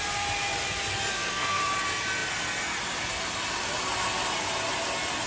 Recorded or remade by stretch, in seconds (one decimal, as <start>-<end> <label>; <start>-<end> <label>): 0.0-1.1 recorded; 1.1-1.6 remade; 1.6-5.3 recorded